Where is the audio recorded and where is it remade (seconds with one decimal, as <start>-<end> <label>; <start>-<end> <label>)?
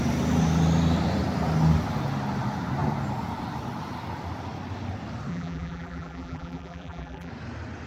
0.0-5.3 recorded; 5.3-7.3 remade; 7.3-7.9 recorded